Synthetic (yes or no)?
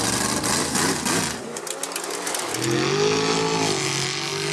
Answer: no